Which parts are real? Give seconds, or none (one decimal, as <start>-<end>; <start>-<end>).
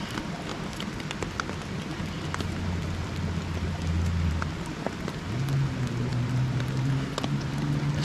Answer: 0.0-6.1; 6.9-8.0